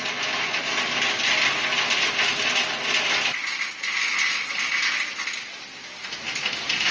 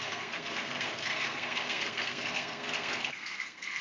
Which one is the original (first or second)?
first